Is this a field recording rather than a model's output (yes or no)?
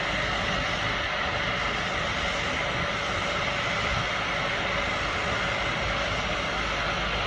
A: yes